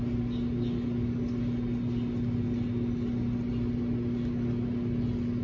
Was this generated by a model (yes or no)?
no